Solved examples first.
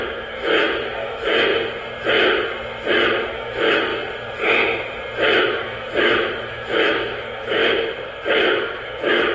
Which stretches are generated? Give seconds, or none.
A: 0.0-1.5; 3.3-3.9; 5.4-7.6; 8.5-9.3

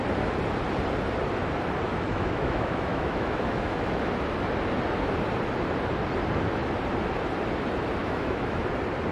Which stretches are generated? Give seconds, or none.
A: 1.9-4.1; 8.0-8.6

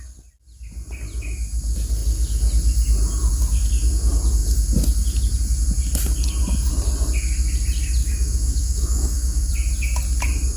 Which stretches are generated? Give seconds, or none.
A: 8.0-9.5